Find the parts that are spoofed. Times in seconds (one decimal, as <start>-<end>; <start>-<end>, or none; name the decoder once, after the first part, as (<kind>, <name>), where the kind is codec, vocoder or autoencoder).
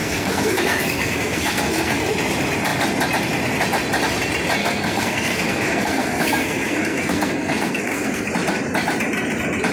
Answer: 0.0-2.1 (codec, SNAC); 4.6-8.3